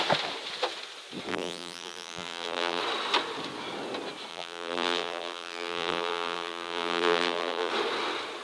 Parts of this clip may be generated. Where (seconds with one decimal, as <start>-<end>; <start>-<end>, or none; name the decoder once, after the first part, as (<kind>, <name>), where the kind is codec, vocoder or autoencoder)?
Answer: 1.3-2.8 (vocoder, BigVGAN v2); 4.3-7.7